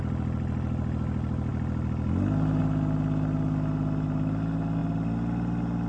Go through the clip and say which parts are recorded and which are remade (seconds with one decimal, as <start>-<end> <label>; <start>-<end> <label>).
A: 0.0-5.9 recorded